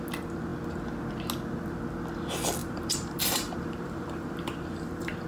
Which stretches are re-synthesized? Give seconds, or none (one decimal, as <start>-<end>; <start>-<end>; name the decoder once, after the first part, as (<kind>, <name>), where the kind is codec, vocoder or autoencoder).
2.6-5.3 (vocoder, BigVGAN v2)